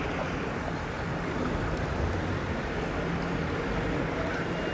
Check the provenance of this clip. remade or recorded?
recorded